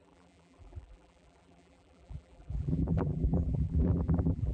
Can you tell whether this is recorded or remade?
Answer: remade